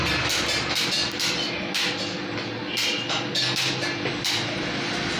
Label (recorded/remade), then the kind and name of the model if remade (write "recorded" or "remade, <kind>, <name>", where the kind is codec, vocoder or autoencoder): recorded